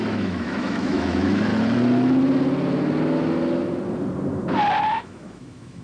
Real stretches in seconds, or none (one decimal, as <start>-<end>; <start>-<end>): 1.5-5.0